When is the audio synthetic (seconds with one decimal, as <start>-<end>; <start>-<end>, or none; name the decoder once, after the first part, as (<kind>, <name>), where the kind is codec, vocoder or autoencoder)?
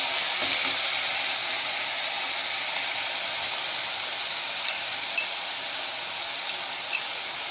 1.4-1.9 (vocoder, Vocos)